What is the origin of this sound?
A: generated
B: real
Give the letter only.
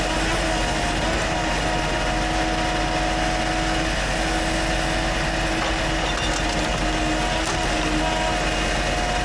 B